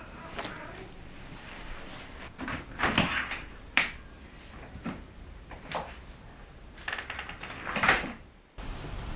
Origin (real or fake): fake